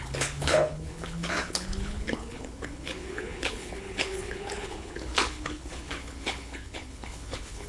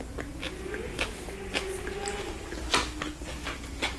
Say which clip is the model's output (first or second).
first